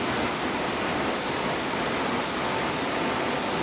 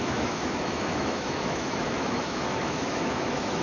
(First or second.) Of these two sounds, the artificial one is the second